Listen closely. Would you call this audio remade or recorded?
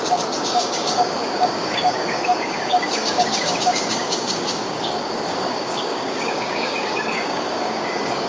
remade